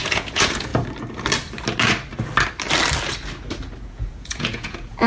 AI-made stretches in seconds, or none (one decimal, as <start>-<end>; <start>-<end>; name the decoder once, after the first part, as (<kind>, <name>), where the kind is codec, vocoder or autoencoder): 0.0-0.7 (vocoder, Vocos); 3.8-5.1